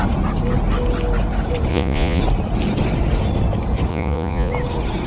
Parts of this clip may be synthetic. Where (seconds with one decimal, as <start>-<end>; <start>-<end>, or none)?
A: 1.7-2.2; 3.9-4.5